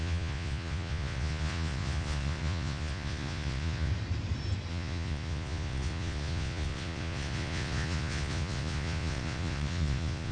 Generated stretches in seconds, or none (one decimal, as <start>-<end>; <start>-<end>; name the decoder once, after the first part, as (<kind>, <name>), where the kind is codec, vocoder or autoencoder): 0.0-3.9 (vocoder, Vocos); 4.7-10.3